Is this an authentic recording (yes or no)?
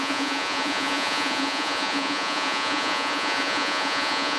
no